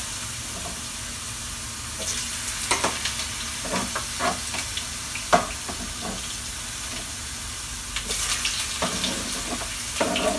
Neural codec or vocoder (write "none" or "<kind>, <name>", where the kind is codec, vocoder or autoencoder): none